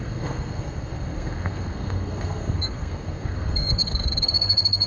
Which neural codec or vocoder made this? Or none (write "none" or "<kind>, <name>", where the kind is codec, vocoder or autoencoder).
codec, SNAC